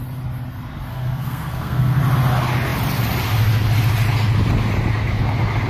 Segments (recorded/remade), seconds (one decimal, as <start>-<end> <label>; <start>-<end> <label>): 0.0-0.9 recorded; 0.9-2.0 remade; 2.0-5.7 recorded